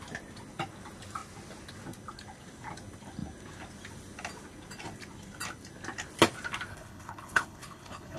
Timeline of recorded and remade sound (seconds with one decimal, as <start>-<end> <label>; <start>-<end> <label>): 0.0-6.7 recorded; 6.7-8.2 remade